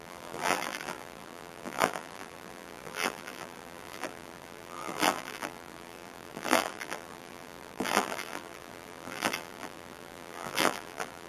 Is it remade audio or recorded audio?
remade